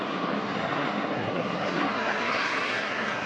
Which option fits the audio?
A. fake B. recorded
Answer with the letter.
A